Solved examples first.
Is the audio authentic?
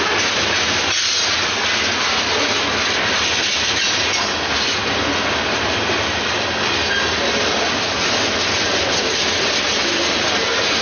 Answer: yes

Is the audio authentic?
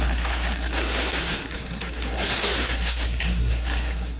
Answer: no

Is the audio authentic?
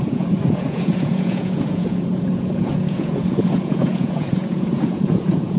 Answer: no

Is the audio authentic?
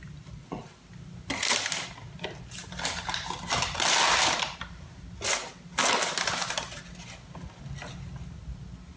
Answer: yes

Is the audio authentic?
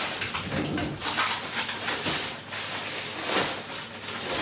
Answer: yes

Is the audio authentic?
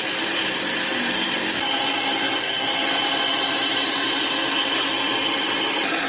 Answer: yes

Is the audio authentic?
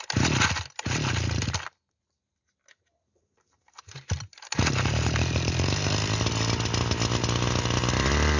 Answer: yes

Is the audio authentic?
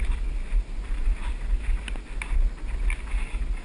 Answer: yes